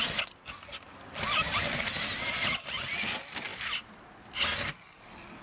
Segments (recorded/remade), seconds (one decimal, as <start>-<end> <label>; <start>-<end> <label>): 0.0-1.5 recorded; 1.5-2.8 remade; 2.8-5.4 recorded